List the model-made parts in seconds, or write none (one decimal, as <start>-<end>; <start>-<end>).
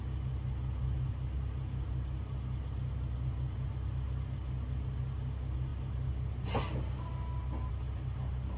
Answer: none